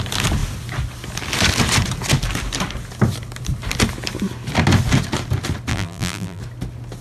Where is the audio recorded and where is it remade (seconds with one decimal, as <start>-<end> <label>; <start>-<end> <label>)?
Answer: 0.0-5.7 recorded; 5.7-6.4 remade; 6.4-7.0 recorded